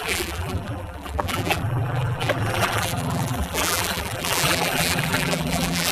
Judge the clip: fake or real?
fake